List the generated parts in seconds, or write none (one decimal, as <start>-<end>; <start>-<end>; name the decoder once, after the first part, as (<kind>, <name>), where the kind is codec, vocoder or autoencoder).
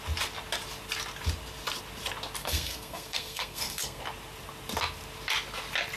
2.4-4.0 (codec, SNAC)